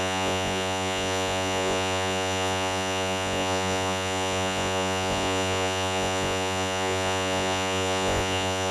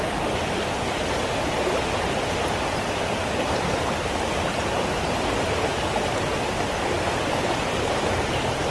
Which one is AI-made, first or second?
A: first